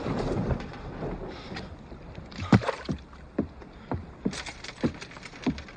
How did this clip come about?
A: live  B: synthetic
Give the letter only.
A